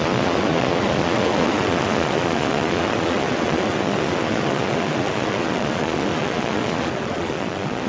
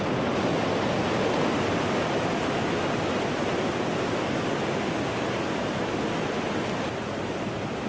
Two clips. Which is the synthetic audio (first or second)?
first